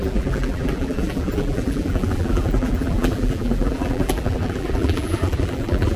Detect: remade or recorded remade